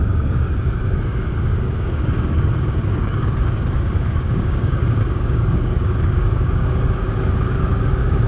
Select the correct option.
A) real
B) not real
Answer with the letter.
B